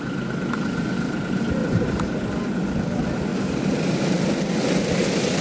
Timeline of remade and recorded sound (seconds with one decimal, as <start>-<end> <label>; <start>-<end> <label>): 0.0-1.6 recorded; 1.6-2.2 remade; 2.2-3.3 recorded; 3.3-4.2 remade; 4.2-5.4 recorded